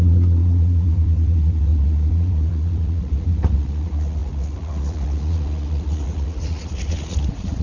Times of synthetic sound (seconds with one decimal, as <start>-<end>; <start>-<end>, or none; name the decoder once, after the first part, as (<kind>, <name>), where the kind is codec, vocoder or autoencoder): 0.0-7.6 (vocoder, Vocos)